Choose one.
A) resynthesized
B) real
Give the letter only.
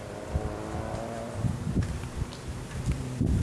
A